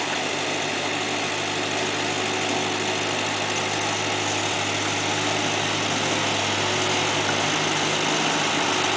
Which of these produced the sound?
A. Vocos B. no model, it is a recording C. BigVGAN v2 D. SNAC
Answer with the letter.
B